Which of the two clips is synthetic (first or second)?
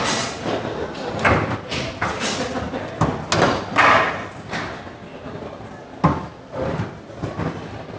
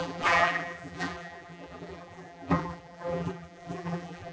second